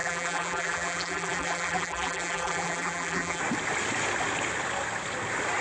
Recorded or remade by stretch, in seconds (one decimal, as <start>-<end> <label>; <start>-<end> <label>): 0.0-3.4 remade; 3.4-5.6 recorded